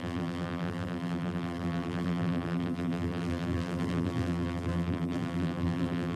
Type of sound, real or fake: fake